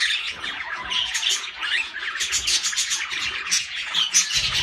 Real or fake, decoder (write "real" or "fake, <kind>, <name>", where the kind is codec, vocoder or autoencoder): fake, vocoder, Vocos